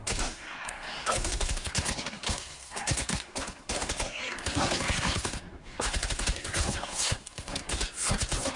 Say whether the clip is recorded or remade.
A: remade